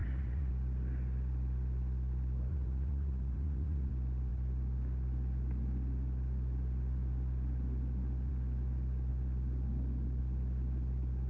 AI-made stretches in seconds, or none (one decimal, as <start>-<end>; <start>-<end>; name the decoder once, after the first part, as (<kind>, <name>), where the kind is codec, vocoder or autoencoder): 0.0-0.5 (vocoder, Vocos); 2.5-3.9